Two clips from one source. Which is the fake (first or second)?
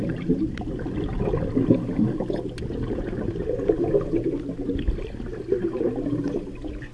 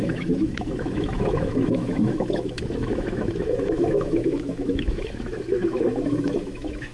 second